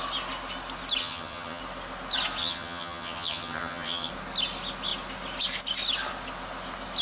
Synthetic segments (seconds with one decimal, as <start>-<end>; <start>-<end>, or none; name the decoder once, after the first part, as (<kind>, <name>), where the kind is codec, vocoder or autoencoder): 1.0-1.6 (vocoder, HiFi-GAN); 2.4-4.1